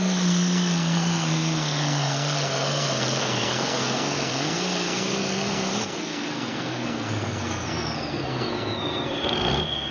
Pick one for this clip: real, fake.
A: fake